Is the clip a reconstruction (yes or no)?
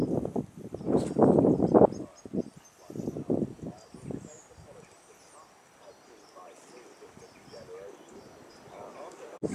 no